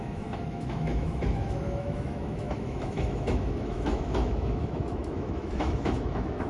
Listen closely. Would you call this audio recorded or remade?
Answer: remade